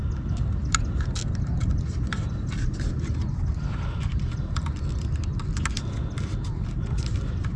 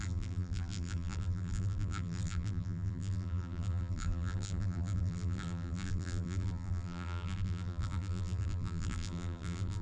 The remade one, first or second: second